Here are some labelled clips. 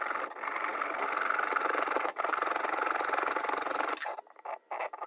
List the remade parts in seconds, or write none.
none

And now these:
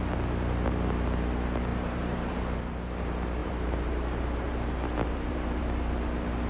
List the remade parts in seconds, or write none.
1.7-2.4 (vocoder, BigVGAN v2); 3.4-5.6

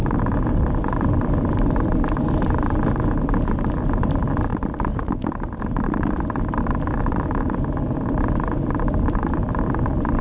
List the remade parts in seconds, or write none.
0.0-1.7 (vocoder, BigVGAN v2); 4.5-10.2

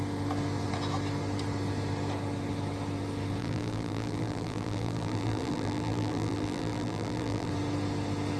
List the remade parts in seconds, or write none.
3.4-7.5 (vocoder, BigVGAN v2)

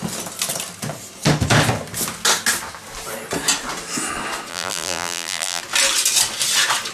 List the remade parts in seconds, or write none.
4.5-5.6 (vocoder, BigVGAN v2)

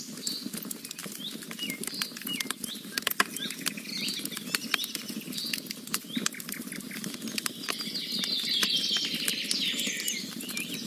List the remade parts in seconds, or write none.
none

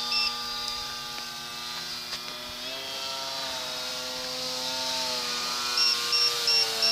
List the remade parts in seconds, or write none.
none

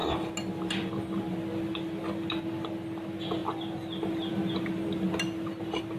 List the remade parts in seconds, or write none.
none